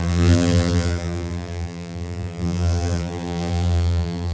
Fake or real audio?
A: fake